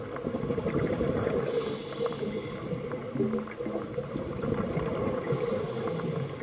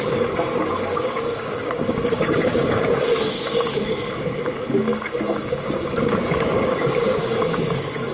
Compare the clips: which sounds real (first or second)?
first